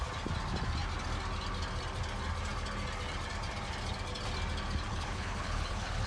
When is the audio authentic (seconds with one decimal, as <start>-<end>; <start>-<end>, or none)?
0.0-4.9